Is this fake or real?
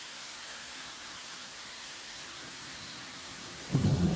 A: fake